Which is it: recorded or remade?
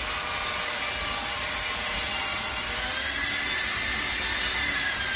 recorded